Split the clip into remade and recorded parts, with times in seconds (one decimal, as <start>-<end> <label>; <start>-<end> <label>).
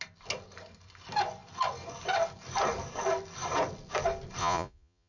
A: 0.0-4.4 recorded; 4.4-5.1 remade